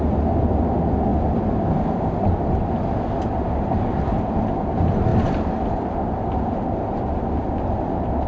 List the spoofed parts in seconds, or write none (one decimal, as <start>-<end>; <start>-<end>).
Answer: 1.1-2.9; 5.1-6.3